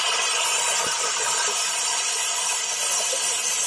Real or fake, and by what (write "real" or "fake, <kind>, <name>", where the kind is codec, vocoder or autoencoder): real